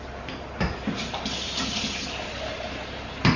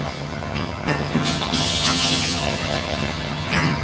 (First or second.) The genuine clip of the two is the first